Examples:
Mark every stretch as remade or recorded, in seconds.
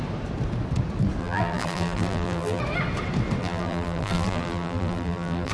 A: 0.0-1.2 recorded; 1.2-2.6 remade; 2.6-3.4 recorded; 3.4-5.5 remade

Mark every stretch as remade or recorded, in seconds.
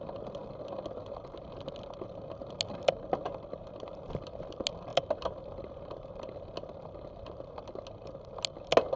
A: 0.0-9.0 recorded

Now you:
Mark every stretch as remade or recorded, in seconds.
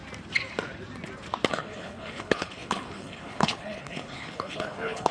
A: 0.0-1.5 recorded; 1.5-5.1 remade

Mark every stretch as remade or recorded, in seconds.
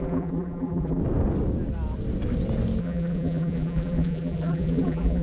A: 0.0-1.0 remade; 1.0-2.8 recorded; 2.8-5.2 remade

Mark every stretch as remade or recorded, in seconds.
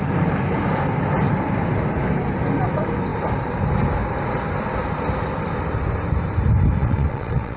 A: 0.0-6.8 recorded; 6.8-7.6 remade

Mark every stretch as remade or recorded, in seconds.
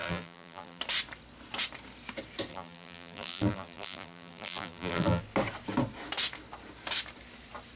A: 0.0-0.8 remade; 0.8-2.5 recorded; 2.5-5.2 remade; 5.2-7.8 recorded